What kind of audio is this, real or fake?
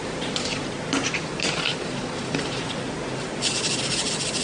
fake